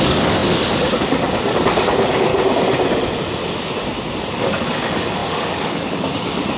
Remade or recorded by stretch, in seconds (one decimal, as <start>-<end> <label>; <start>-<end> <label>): 0.0-2.3 remade; 2.3-4.2 recorded; 4.2-6.6 remade